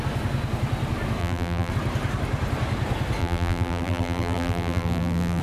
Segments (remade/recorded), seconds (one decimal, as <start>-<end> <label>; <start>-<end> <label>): 0.0-1.2 recorded; 1.2-1.7 remade; 1.7-3.2 recorded; 3.2-5.4 remade

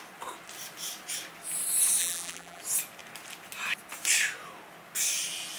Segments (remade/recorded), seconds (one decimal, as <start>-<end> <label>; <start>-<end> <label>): 0.0-2.0 recorded; 2.0-2.6 remade; 2.6-5.6 recorded

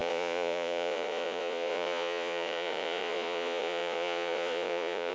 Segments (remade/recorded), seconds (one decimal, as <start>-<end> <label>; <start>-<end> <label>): 0.0-5.1 remade